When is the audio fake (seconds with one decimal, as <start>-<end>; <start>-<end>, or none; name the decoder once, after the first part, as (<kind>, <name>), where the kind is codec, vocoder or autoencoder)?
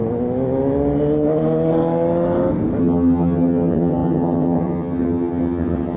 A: 2.8-6.0 (vocoder, HiFi-GAN)